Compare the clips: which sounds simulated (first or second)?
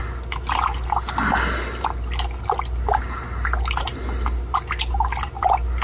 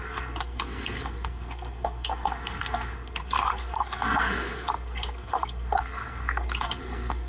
second